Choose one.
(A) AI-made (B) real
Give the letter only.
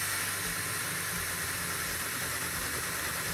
B